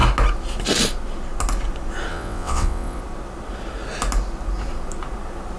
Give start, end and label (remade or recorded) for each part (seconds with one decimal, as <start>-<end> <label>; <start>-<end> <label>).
0.0-2.1 recorded; 2.1-3.0 remade; 3.0-5.6 recorded